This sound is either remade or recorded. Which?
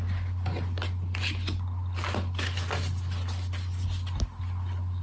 recorded